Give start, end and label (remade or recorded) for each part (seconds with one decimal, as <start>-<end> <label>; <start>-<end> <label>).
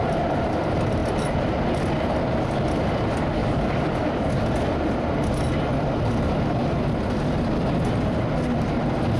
0.0-3.4 recorded; 3.4-4.4 remade; 4.4-9.2 recorded